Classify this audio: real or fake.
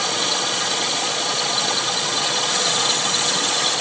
fake